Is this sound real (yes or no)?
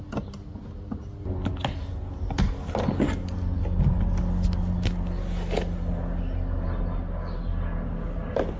yes